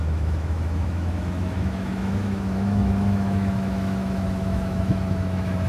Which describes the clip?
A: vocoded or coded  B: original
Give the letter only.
A